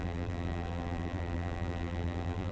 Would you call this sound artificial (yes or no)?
yes